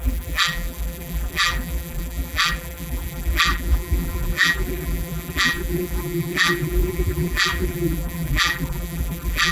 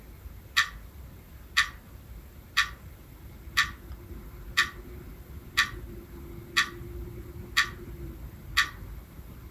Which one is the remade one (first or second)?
first